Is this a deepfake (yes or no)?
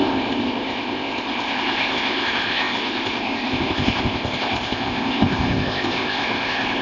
yes